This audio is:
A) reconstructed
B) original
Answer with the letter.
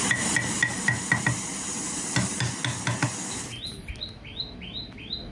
B